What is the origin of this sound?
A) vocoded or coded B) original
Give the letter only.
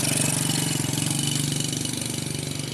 B